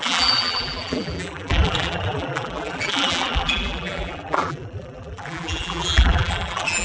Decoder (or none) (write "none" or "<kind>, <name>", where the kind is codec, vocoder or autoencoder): vocoder, BigVGAN v2